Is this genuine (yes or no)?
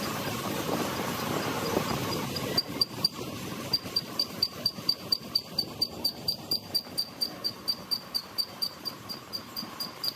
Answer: no